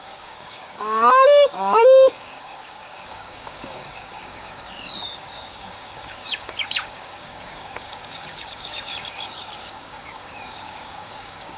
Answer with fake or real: fake